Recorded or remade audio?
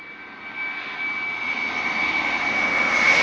recorded